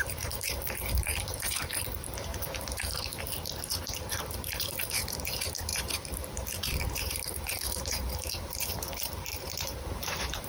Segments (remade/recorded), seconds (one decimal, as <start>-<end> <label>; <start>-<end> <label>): 0.0-3.1 remade; 3.1-3.7 recorded; 3.7-10.5 remade